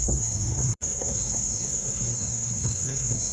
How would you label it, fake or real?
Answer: fake